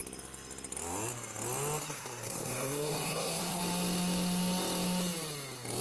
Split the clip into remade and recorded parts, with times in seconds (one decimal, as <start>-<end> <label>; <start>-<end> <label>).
0.0-1.8 recorded; 1.8-3.6 remade; 3.6-5.8 recorded